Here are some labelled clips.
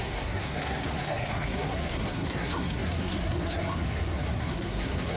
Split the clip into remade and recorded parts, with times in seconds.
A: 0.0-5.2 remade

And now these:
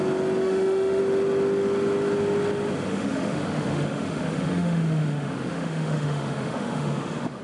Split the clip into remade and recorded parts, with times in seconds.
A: 0.0-0.4 recorded; 0.4-1.0 remade; 1.0-2.9 recorded; 2.9-7.4 remade

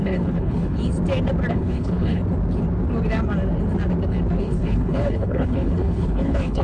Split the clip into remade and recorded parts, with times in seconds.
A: 0.0-0.8 remade; 0.8-1.5 recorded; 1.5-2.2 remade; 2.2-4.4 recorded; 4.4-6.6 remade

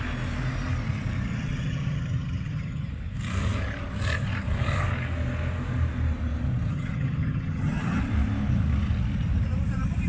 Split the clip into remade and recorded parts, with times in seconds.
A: 0.0-1.3 recorded; 1.3-2.9 remade; 2.9-6.7 recorded; 6.7-8.0 remade; 8.0-10.1 recorded

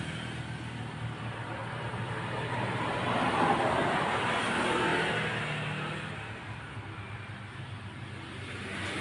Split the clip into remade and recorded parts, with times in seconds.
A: 0.0-9.0 recorded

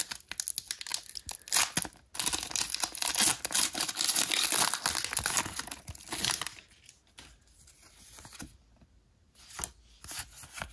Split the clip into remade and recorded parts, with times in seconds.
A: 0.0-10.7 recorded